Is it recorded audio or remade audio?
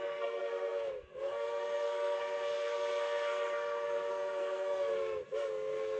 remade